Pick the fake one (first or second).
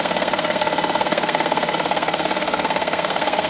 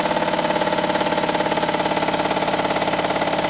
first